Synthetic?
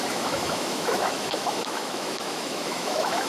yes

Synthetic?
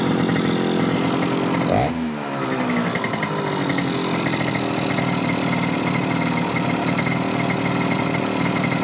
no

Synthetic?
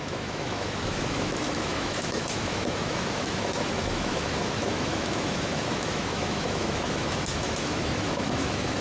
yes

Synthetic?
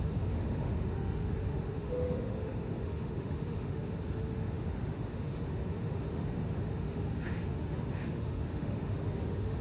yes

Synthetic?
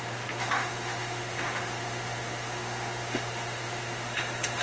yes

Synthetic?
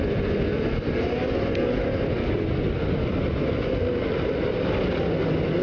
no